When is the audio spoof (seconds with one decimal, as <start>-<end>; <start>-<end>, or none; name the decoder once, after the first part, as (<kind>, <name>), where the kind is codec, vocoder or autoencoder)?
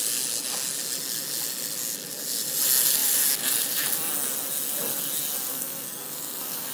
5.5-6.7 (codec, SNAC)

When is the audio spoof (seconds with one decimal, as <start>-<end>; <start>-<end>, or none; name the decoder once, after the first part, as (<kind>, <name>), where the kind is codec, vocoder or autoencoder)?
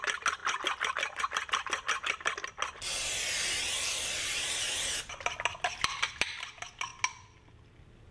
none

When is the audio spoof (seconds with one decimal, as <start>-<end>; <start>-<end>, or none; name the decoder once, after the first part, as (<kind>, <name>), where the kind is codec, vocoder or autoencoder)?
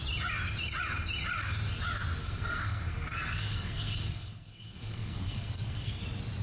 2.2-6.0 (codec, SNAC)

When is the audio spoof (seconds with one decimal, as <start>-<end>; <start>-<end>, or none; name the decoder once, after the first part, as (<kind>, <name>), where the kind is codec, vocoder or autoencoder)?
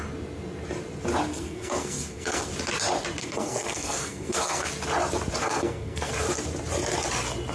1.3-2.5 (codec, SNAC); 3.2-4.7; 5.4-6.1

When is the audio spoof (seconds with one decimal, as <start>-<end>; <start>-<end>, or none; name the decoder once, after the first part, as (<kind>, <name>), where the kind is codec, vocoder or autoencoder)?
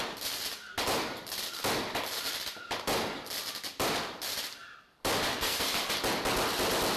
5.3-5.9 (codec, SNAC)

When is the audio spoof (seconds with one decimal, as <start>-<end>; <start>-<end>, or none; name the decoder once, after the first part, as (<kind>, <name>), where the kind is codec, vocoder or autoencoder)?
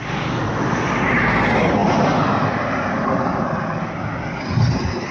none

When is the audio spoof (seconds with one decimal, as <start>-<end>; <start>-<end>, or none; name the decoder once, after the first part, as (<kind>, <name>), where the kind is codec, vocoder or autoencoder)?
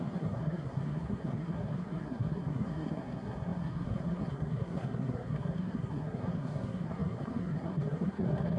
0.0-8.6 (codec, SNAC)